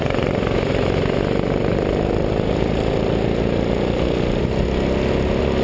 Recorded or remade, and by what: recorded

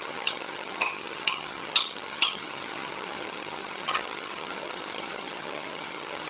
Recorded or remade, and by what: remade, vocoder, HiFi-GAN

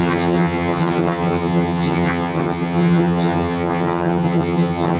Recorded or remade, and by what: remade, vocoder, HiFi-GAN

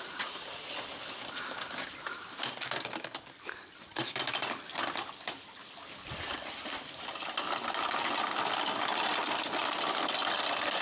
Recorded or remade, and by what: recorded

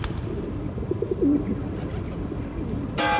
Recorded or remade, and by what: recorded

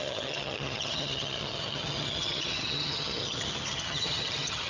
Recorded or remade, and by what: remade, vocoder, HiFi-GAN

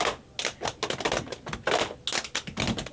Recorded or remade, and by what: recorded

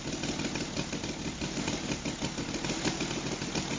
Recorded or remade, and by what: recorded